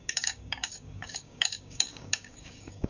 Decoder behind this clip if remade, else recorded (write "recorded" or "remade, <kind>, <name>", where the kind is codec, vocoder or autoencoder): remade, codec, DAC